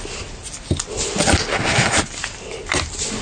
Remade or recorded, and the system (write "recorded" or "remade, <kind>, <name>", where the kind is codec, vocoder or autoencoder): recorded